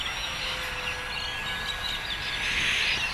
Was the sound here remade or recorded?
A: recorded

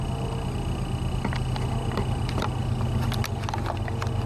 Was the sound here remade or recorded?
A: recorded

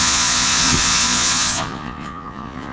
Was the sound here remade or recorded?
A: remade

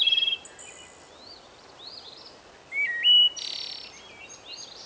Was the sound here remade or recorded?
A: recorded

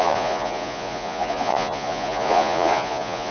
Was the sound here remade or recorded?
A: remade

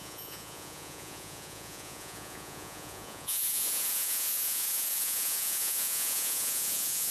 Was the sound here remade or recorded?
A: remade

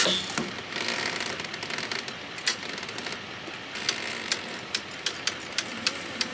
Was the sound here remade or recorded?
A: recorded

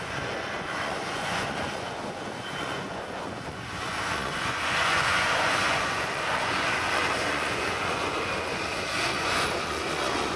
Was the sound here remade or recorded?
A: remade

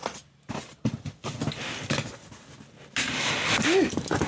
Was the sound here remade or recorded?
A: recorded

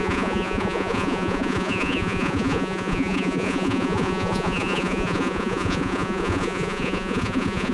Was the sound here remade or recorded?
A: remade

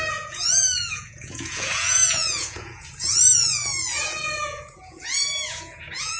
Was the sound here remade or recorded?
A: remade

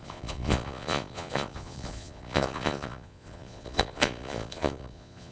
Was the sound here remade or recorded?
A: remade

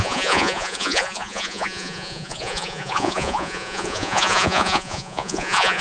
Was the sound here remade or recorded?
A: remade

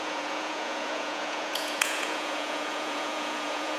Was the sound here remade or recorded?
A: remade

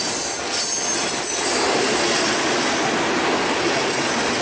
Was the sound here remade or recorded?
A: recorded